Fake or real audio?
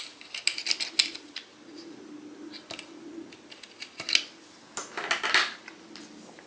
real